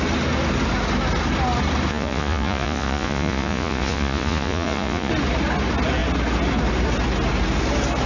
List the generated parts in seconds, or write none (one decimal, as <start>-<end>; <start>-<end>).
1.9-5.1